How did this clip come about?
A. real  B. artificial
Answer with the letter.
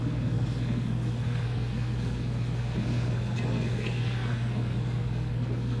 B